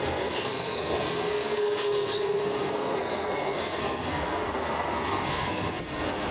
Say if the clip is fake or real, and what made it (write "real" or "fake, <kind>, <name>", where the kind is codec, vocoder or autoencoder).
fake, codec, SNAC